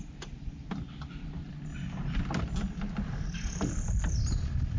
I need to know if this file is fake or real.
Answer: real